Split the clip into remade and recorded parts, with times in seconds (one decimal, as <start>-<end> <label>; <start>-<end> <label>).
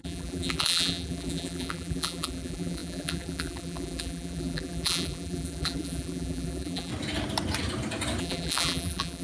0.0-6.9 remade; 6.9-8.2 recorded; 8.2-9.2 remade